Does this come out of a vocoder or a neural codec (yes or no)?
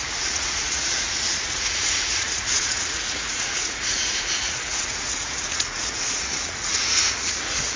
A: yes